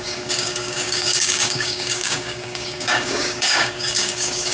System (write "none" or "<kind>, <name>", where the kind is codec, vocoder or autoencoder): codec, DAC